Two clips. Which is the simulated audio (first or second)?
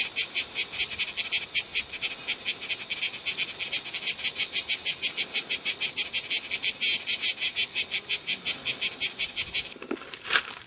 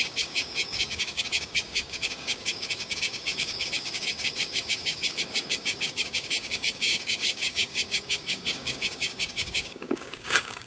second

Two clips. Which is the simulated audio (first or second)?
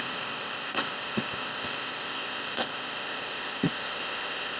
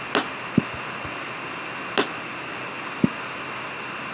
first